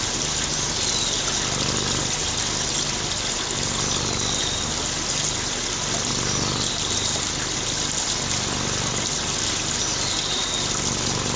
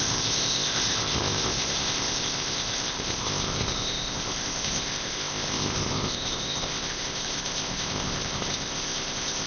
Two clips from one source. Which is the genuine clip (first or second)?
first